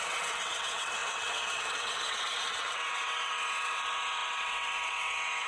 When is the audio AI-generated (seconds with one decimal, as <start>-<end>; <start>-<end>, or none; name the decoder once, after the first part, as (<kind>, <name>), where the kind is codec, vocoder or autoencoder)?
0.0-5.5 (vocoder, WaveNeXt)